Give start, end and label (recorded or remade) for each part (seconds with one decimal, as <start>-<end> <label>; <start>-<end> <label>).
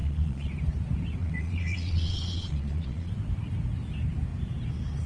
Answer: 0.0-0.5 remade; 0.5-1.2 recorded; 1.2-3.1 remade; 3.1-5.1 recorded